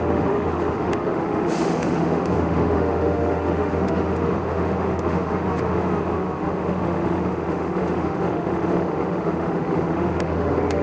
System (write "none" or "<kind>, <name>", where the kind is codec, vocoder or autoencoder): autoencoder, DAC-VAE